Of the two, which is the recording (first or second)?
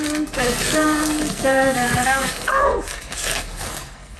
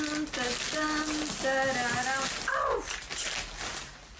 second